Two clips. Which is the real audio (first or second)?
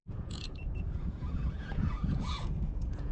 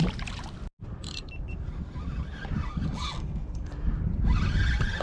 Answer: second